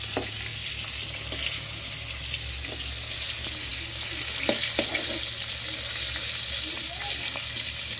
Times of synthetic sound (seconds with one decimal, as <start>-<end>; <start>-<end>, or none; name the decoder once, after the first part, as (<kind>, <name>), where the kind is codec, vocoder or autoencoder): none